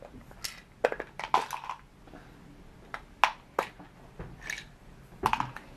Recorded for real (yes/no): yes